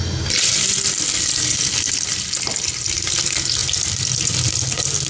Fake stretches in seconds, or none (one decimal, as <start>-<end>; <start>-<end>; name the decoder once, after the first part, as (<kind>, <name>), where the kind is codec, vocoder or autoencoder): none

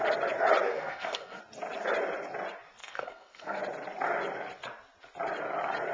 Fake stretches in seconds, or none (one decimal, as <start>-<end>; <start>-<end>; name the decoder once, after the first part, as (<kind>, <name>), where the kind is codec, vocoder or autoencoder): 0.7-1.4 (codec, SNAC); 2.8-3.6

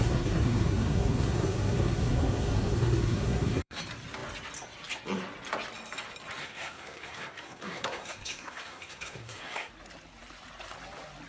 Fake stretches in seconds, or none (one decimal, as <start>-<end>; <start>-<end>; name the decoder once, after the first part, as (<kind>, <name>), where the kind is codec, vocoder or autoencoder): 0.0-3.8 (codec, SNAC); 6.4-9.7

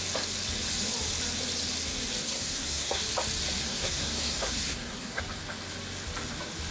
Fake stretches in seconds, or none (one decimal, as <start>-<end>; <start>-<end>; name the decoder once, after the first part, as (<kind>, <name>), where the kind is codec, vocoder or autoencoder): 2.2-3.0 (codec, SNAC); 3.6-5.2

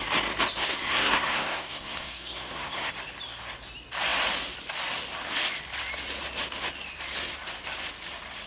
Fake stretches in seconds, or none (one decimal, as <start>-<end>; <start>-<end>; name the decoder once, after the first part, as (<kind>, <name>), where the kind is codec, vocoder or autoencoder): 0.6-2.9 (codec, SNAC)

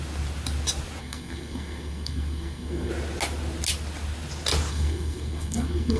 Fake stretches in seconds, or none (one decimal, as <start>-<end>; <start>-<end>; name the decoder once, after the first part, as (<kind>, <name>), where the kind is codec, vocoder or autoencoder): 1.0-2.9 (codec, SNAC); 4.7-6.0

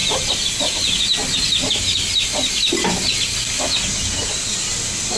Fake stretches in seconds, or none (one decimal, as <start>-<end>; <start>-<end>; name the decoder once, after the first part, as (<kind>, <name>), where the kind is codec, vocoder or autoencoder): none